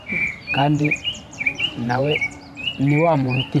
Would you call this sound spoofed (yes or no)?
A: yes